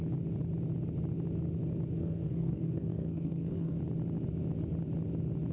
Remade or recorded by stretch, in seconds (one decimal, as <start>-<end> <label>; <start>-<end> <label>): 0.0-2.0 recorded; 2.0-3.8 remade; 3.8-5.5 recorded